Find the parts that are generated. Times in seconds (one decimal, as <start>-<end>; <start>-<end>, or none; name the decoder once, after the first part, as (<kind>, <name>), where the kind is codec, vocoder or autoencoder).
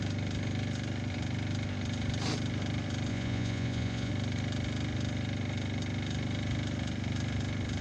3.1-4.1 (vocoder, Vocos)